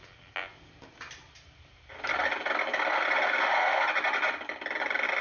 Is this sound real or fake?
real